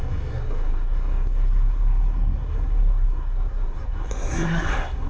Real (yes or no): no